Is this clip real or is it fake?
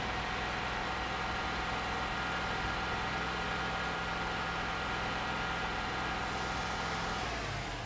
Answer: real